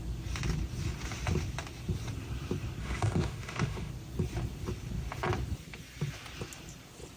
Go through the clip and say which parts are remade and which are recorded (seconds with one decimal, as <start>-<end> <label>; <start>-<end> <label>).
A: 0.0-2.8 recorded; 2.8-3.9 remade; 3.9-7.2 recorded